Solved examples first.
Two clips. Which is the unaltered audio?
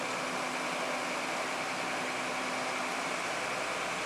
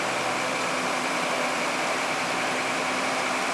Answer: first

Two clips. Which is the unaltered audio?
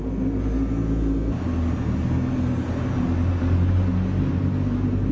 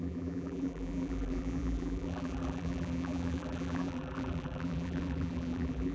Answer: first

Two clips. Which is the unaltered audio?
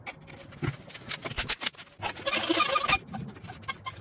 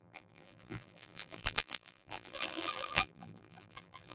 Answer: first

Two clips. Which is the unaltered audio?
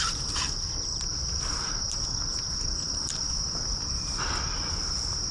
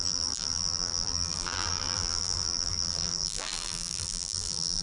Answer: first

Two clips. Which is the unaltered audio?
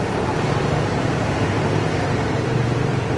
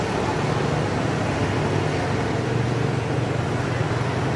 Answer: second